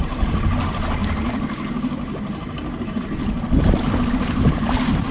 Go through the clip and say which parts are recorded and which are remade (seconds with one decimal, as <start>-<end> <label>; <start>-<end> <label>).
0.0-1.0 remade; 1.0-4.1 recorded; 4.1-5.1 remade